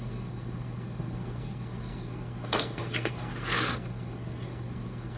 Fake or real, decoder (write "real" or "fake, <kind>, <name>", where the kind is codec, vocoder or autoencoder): fake, codec, SNAC